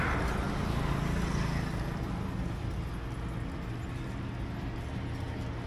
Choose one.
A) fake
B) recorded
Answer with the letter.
B